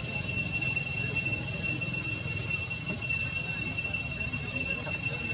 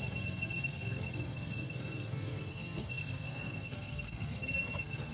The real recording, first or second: first